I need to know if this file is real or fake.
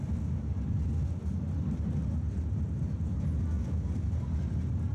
real